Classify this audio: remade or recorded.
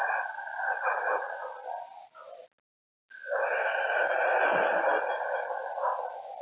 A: recorded